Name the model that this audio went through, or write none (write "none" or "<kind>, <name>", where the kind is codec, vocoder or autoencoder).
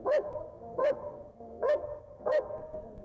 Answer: codec, SNAC